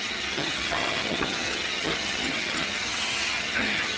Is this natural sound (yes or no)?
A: no